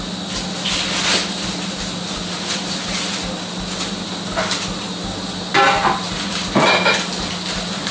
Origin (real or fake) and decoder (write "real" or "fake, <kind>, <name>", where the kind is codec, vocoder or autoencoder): real